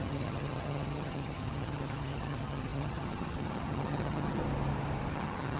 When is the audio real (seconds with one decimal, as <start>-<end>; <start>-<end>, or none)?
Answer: 4.4-5.1